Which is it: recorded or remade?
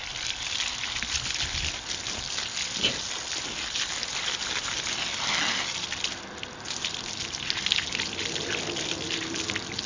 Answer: recorded